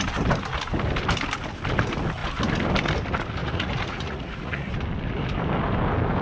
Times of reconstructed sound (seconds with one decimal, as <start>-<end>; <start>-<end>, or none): 3.4-4.7